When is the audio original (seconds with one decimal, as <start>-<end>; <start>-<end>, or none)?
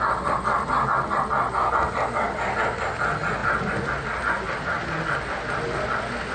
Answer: 0.0-6.3